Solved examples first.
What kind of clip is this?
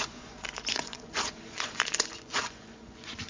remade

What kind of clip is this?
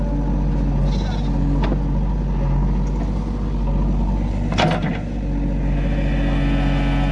recorded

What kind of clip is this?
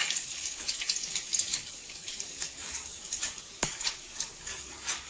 remade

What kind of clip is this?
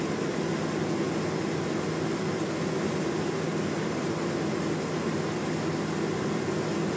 recorded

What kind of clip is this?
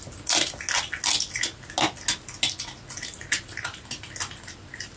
recorded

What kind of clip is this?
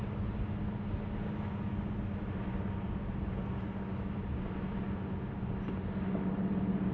recorded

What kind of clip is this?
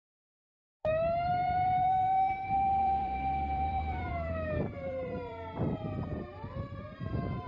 remade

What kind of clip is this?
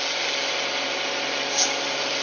remade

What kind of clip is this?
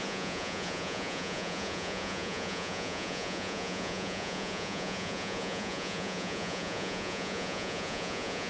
remade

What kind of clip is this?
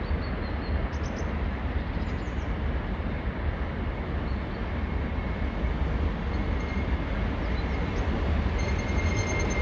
recorded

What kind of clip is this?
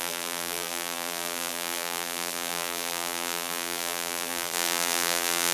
remade